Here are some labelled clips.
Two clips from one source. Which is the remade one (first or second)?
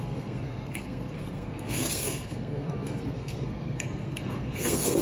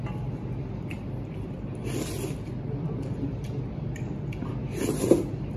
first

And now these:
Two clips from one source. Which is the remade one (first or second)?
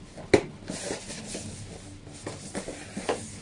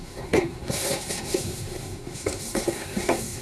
second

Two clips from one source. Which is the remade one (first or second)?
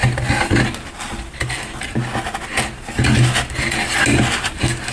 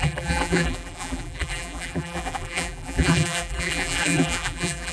second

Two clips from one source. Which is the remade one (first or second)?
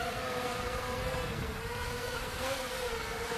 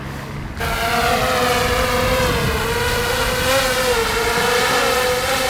first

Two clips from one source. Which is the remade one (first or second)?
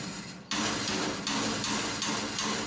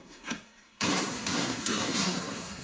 second